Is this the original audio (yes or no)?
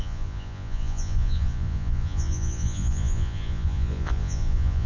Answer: no